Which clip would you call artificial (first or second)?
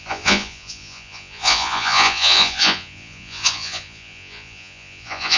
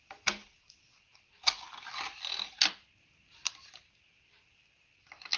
first